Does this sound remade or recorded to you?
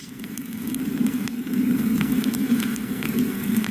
remade